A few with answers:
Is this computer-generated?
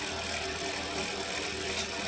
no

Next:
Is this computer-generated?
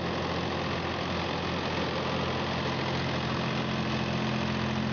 no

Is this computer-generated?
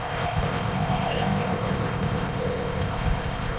yes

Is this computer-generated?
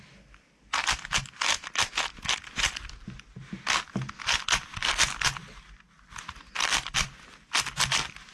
no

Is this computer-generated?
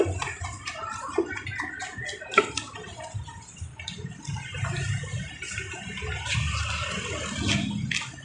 no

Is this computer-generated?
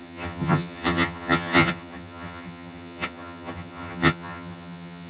yes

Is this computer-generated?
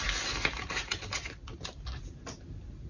no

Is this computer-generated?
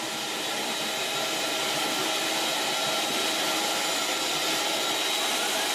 no